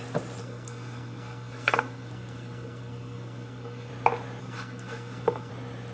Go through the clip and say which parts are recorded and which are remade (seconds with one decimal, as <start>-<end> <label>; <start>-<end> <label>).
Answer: 0.0-0.4 recorded; 0.4-3.9 remade; 3.9-4.4 recorded; 4.4-5.5 remade; 5.5-5.9 recorded